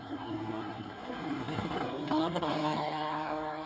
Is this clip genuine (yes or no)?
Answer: no